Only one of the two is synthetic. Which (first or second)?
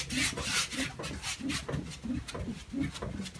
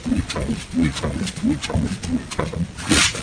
second